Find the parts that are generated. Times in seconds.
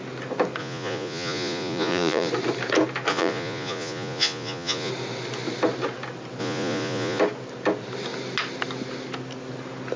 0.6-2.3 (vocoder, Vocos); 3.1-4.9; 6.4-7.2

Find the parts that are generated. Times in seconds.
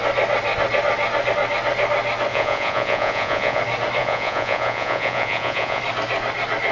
2.3-3.6 (vocoder, Vocos); 4.0-5.8